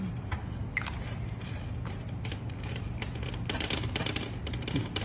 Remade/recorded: recorded